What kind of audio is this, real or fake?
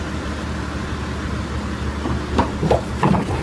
real